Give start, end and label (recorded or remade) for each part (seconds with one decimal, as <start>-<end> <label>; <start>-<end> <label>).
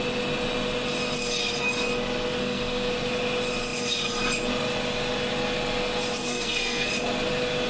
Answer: 0.0-2.4 recorded; 2.4-2.9 remade; 2.9-6.2 recorded; 6.2-6.9 remade; 6.9-7.7 recorded